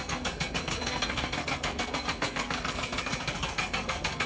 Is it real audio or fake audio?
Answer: fake